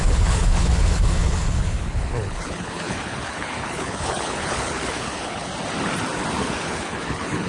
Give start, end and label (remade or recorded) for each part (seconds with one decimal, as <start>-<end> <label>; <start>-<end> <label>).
0.0-5.5 remade; 5.5-6.4 recorded; 6.4-7.5 remade